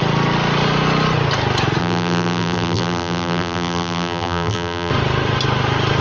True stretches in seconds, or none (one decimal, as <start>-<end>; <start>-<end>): 0.0-1.8; 4.9-6.0